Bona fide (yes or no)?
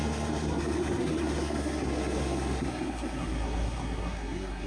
no